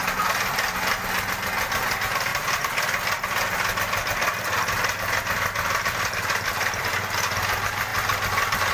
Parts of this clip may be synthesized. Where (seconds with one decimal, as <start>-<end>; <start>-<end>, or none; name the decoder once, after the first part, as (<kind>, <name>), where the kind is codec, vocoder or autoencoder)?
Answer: none